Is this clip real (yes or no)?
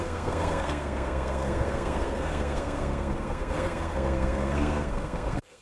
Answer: no